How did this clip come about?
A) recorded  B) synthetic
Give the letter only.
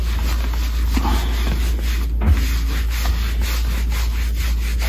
A